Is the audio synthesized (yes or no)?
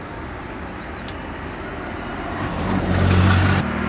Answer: no